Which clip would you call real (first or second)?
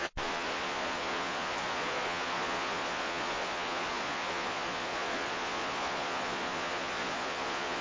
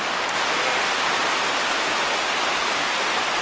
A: second